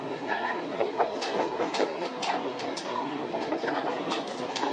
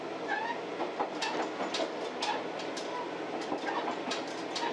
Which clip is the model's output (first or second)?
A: first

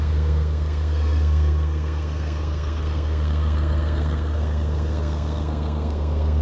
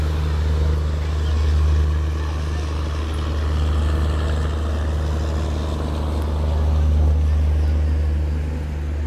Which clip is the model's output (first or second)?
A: first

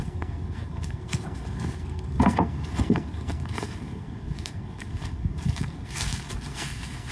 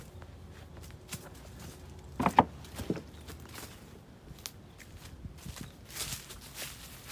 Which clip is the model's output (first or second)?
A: first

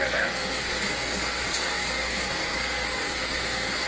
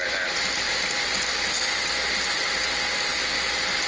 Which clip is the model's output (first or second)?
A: first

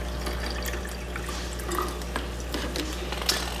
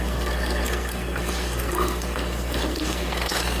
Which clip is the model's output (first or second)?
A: second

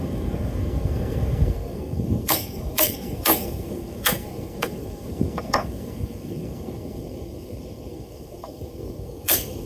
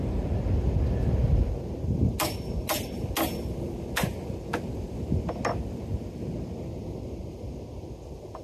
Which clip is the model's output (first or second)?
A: first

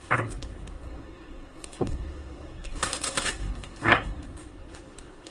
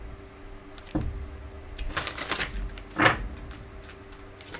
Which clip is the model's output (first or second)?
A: first